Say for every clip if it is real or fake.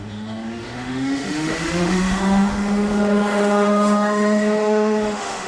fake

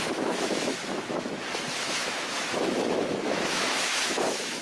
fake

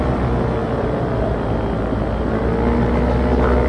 real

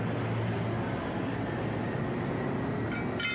real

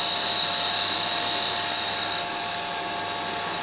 real